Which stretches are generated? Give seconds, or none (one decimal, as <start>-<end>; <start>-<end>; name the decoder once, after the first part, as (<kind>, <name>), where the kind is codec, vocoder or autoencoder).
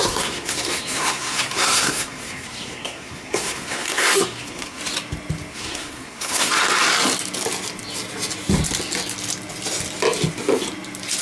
0.0-4.8 (codec, SNAC); 5.5-6.5